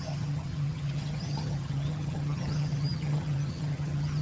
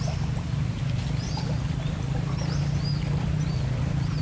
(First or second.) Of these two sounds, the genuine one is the second